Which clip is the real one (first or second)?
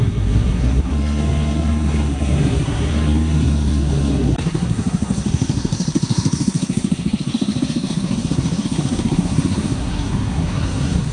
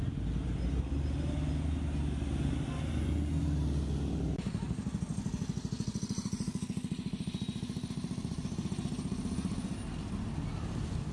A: second